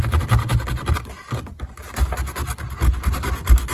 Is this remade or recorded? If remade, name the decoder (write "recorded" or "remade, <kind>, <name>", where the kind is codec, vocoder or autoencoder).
recorded